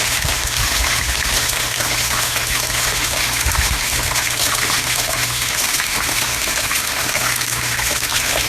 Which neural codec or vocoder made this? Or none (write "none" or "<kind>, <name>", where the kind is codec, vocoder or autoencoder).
autoencoder, DAC-VAE